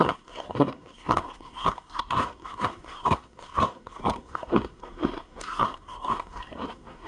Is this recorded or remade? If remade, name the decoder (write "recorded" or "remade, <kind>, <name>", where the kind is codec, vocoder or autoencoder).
remade, codec, SNAC